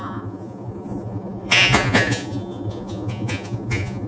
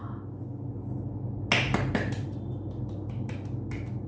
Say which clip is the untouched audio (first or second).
second